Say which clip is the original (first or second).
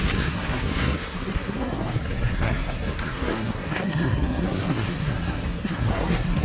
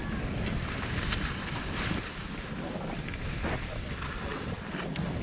second